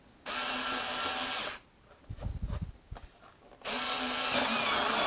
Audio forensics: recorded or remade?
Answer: recorded